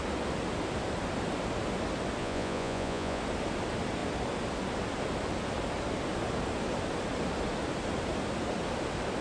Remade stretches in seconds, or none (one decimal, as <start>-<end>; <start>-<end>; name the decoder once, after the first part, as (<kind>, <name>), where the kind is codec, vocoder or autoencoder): 2.2-3.2 (vocoder, Vocos)